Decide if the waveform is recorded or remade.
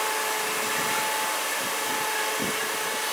recorded